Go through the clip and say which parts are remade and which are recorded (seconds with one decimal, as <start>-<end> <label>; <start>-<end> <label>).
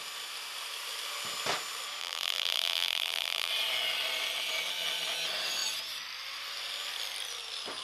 0.0-2.0 recorded; 2.0-3.5 remade; 3.5-7.8 recorded